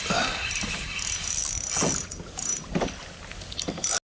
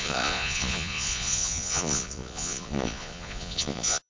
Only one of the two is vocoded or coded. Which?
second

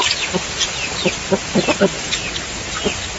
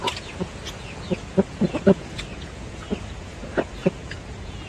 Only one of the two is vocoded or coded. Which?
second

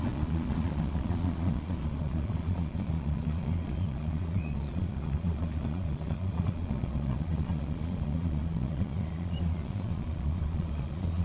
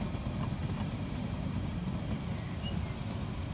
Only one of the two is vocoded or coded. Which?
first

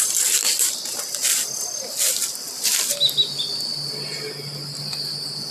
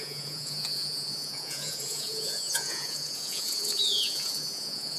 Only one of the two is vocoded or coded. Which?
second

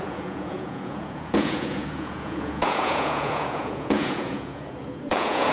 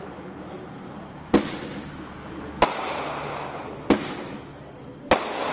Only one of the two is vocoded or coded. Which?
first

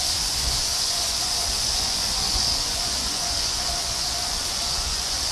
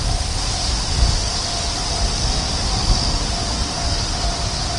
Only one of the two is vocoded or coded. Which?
first